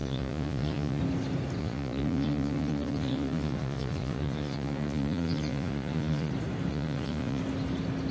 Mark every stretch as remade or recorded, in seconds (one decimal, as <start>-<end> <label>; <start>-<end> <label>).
0.0-1.0 remade; 1.0-1.6 recorded; 1.6-6.3 remade; 6.3-6.7 recorded; 6.7-7.4 remade; 7.4-8.1 recorded